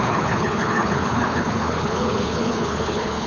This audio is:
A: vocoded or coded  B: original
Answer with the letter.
A